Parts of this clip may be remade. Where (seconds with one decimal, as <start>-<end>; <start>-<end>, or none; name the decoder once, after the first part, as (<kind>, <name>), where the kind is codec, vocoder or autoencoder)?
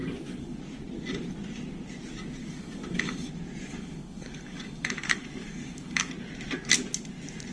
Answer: 0.0-0.6 (codec, DAC); 2.4-3.3; 3.7-6.1